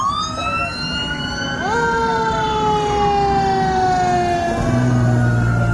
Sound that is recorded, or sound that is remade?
recorded